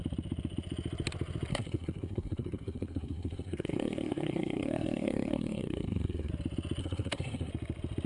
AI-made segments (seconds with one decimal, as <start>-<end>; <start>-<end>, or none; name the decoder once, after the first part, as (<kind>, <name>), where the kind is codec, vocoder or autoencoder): 1.5-6.3 (codec, SNAC); 6.8-7.5